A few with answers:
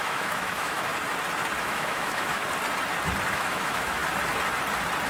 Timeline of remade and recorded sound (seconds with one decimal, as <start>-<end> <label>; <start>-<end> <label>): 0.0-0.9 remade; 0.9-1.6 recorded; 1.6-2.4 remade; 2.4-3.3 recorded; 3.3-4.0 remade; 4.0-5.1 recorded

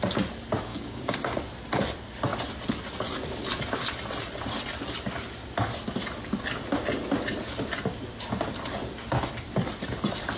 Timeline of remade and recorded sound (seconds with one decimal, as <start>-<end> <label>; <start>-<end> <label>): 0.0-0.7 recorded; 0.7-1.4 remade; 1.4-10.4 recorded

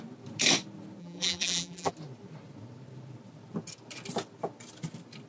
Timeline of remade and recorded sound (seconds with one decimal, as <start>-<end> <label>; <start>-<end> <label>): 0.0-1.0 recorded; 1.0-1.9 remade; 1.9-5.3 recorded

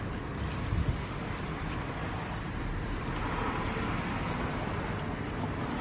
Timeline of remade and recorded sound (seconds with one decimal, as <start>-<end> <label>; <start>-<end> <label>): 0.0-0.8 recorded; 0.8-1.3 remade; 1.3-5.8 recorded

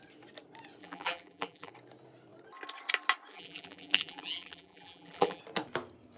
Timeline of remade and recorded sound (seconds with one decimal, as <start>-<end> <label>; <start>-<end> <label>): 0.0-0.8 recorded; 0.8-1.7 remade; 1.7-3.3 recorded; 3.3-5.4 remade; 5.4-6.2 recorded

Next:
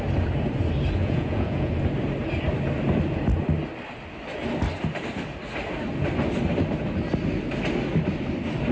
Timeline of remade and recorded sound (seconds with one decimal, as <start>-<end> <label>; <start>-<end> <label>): 0.0-1.0 recorded; 1.0-1.7 remade; 1.7-8.7 recorded